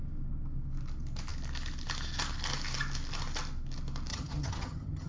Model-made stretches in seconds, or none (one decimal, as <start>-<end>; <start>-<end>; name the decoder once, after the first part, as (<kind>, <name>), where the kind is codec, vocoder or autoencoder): 4.1-5.1 (vocoder, HiFi-GAN)